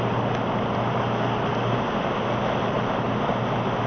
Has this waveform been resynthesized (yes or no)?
no